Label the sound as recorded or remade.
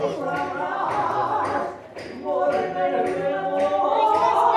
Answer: recorded